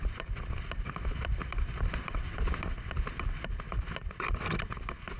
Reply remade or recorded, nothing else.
remade